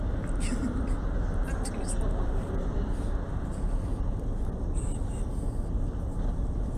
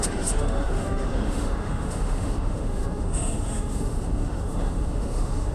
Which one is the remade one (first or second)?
second